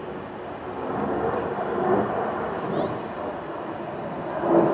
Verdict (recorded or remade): recorded